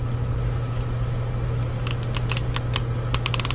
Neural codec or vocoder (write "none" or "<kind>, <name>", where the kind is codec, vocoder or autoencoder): none